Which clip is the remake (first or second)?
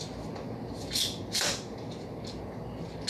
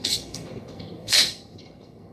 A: second